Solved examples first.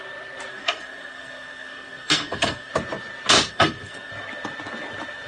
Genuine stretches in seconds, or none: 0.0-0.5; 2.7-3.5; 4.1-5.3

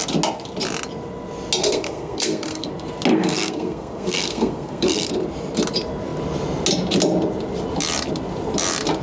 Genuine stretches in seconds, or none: 0.0-1.6; 2.7-3.1; 5.1-9.0

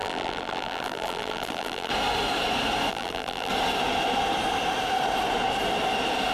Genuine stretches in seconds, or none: 1.9-2.9; 3.5-6.3